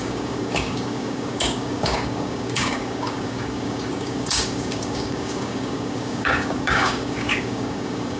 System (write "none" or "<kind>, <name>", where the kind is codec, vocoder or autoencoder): codec, DAC